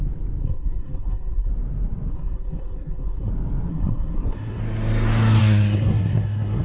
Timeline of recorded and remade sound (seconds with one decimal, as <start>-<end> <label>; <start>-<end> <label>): 0.0-0.4 recorded; 0.4-1.5 remade; 1.5-2.1 recorded; 2.1-3.3 remade; 3.3-3.7 recorded; 3.7-4.6 remade; 4.6-5.4 recorded; 5.4-6.6 remade